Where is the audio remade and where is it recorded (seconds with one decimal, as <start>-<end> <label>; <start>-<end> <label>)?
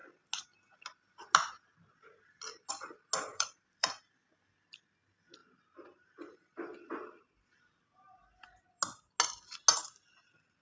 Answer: 0.0-3.3 recorded; 3.3-4.2 remade; 4.2-10.6 recorded